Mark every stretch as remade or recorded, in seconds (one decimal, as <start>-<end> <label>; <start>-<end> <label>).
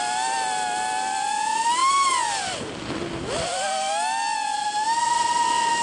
0.0-5.8 recorded